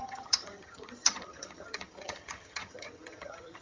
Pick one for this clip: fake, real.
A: fake